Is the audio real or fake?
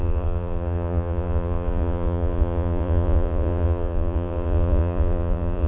fake